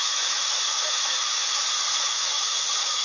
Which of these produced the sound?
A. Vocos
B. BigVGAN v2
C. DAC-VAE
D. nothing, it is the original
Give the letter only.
C